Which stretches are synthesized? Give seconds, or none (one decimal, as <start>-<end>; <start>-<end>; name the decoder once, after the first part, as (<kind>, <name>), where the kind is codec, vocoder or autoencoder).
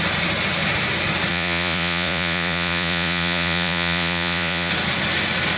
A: 1.3-4.7 (vocoder, Vocos)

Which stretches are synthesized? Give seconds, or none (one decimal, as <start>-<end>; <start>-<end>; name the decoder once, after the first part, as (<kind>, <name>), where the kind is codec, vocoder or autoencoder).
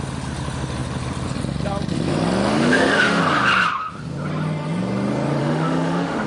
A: 2.5-3.2 (autoencoder, DAC-VAE); 5.4-6.3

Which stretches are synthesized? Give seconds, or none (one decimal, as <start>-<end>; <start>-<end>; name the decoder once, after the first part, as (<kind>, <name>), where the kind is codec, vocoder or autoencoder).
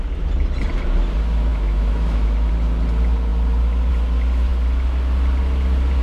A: 1.5-2.5 (autoencoder, DAC-VAE)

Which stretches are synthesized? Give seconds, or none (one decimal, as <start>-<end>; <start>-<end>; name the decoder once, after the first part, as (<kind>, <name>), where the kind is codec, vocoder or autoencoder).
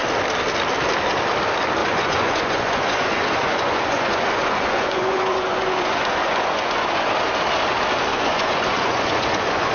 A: 1.8-7.1 (vocoder, Vocos); 8.1-9.7